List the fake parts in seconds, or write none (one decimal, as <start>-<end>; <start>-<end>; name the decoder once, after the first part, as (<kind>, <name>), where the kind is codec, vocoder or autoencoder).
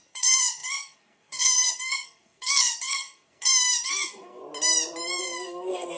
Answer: 0.0-4.4 (codec, SNAC); 5.2-6.0